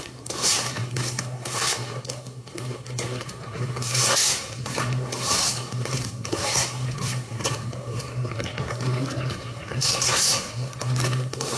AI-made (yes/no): yes